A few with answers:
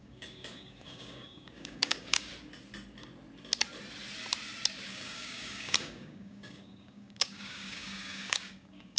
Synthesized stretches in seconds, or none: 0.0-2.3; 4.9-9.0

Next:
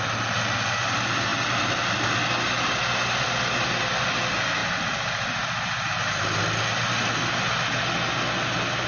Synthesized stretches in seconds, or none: 4.6-6.4

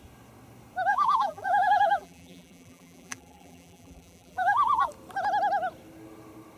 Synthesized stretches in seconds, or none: 0.9-4.9

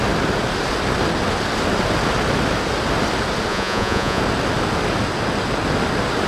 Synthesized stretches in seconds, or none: 3.5-4.2